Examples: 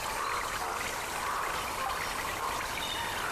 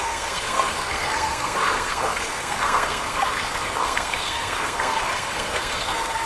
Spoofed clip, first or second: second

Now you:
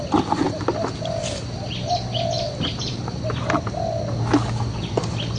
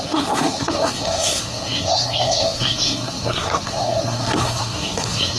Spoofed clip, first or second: second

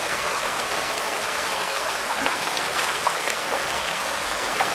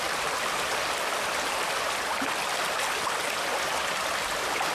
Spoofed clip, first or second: first